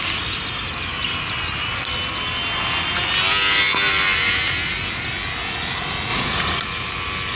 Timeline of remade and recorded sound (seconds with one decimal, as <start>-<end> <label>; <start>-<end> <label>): 0.0-6.1 recorded; 6.1-6.6 remade; 6.6-7.4 recorded